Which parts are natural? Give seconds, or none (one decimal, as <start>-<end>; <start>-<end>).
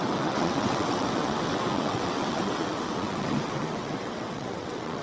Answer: none